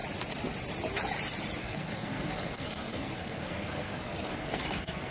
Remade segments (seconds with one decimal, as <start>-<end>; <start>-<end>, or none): 1.6-5.1

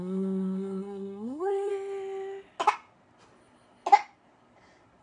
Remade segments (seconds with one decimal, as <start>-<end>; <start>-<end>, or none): 0.0-1.7

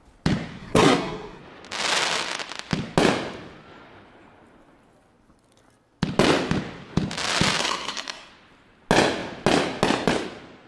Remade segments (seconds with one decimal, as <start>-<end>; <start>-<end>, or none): 0.6-1.4; 7.6-8.3

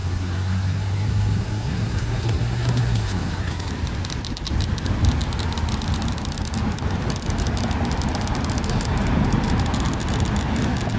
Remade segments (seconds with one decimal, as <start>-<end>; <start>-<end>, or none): 0.0-3.7

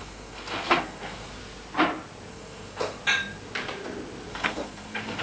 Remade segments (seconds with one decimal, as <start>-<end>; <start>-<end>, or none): 0.0-1.4; 2.3-3.0; 4.3-5.2

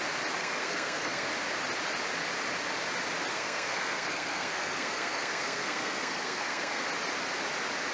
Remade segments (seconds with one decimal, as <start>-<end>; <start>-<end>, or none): 0.4-1.3; 3.3-6.8